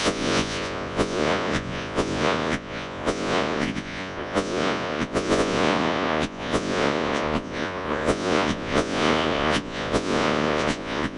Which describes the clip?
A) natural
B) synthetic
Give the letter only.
B